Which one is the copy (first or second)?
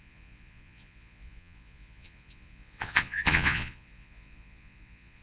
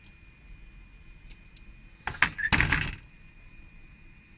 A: first